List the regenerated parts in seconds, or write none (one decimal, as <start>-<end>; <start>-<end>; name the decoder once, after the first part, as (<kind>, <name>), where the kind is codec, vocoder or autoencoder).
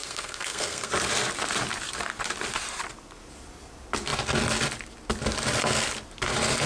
0.0-0.9 (codec, SNAC)